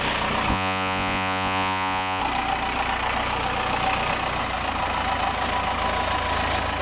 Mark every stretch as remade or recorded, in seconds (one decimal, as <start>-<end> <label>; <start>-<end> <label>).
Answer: 0.0-0.5 recorded; 0.5-2.2 remade; 2.2-6.8 recorded